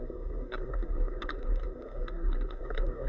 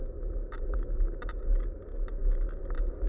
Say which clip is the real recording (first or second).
second